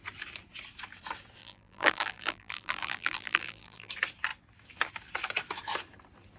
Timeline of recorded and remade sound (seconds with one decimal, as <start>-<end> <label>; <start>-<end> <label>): 0.0-1.4 recorded; 1.4-3.9 remade; 3.9-6.4 recorded